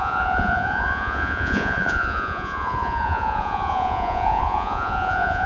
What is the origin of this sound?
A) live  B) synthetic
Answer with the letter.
B